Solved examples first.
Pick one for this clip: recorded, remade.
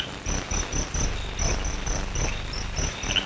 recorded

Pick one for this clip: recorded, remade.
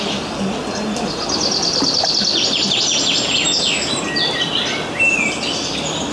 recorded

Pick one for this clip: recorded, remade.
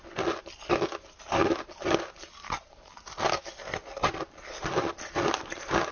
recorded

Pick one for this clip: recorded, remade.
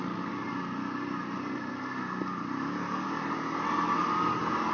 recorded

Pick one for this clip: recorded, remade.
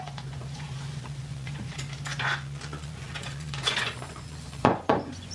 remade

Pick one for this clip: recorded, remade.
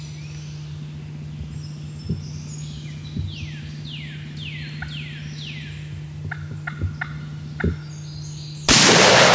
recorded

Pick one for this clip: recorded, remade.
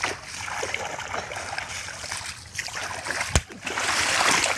recorded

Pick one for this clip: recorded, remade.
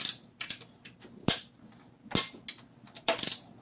recorded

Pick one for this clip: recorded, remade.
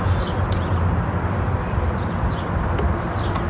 recorded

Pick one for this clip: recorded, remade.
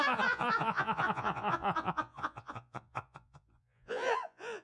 remade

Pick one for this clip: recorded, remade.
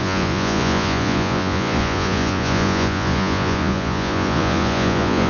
remade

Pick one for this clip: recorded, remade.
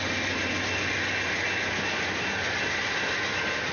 recorded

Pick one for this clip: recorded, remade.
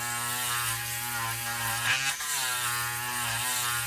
recorded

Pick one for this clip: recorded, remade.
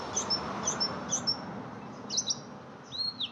recorded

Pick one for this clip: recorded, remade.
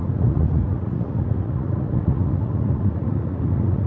remade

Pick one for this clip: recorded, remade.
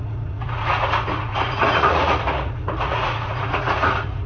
remade